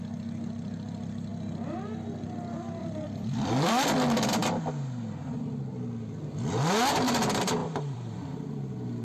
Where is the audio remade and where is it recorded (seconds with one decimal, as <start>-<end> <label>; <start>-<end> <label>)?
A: 0.0-2.8 recorded; 2.8-3.7 remade; 3.7-7.6 recorded; 7.6-8.2 remade; 8.2-9.0 recorded